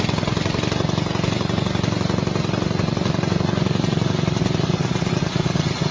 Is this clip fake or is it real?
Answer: real